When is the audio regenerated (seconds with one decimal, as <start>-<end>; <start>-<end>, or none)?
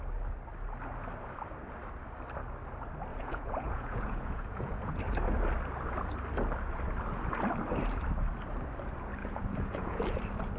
3.1-5.0; 9.2-10.2